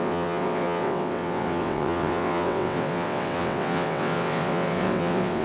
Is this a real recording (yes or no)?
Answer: no